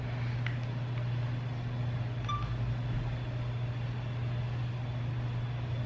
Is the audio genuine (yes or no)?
yes